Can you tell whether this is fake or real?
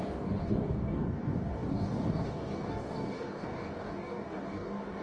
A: fake